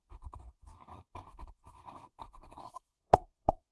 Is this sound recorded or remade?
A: remade